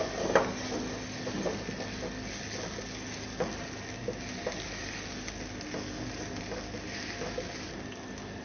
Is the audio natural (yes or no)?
yes